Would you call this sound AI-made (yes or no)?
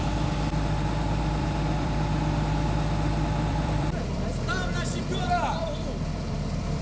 yes